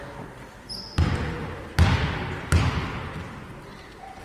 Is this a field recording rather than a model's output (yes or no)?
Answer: yes